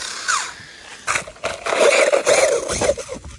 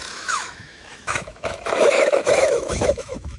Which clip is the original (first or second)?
first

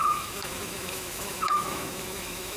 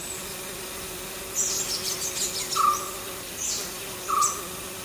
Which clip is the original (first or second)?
second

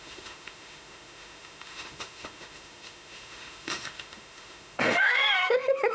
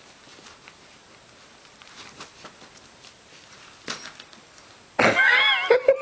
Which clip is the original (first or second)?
second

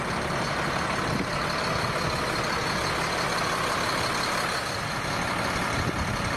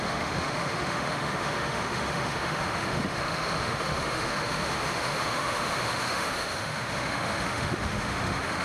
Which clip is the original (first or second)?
first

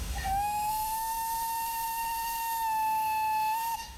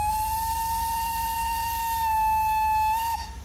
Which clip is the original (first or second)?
second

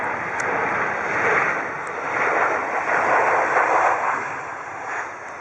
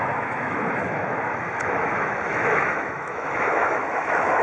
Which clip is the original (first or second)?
first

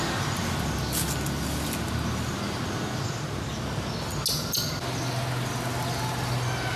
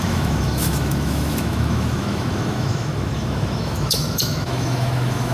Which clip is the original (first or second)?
first